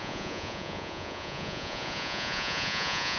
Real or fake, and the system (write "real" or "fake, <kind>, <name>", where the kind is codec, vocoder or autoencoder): fake, vocoder, Vocos